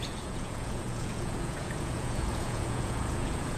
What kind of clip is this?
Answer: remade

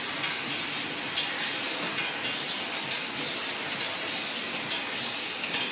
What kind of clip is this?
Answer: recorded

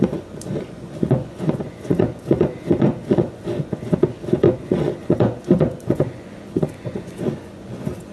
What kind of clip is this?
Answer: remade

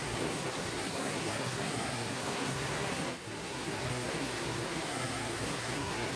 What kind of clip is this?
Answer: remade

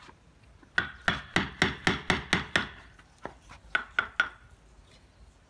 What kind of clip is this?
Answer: recorded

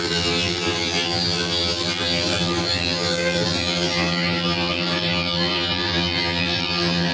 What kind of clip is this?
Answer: remade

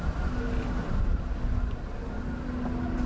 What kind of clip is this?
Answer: recorded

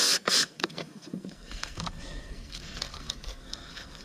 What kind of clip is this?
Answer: remade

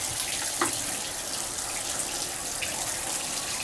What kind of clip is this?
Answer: recorded